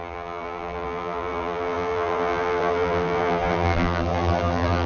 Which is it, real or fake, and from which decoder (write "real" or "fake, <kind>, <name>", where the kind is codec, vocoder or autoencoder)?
fake, vocoder, BigVGAN v2